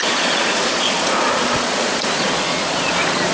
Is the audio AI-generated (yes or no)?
yes